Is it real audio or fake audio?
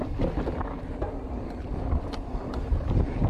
real